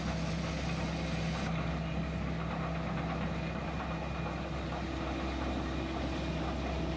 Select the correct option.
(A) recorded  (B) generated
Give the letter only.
A